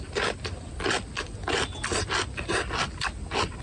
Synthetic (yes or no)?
no